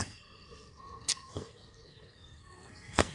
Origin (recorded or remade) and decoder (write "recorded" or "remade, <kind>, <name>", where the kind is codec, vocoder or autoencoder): remade, codec, SNAC